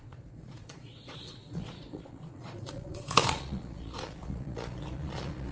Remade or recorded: remade